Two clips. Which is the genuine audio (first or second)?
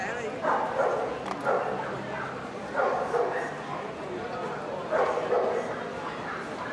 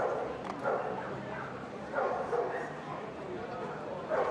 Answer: first